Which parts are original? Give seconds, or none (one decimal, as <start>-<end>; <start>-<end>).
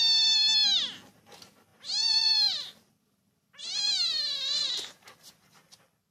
0.0-4.6; 5.3-6.1